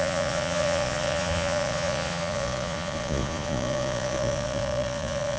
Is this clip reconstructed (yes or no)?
yes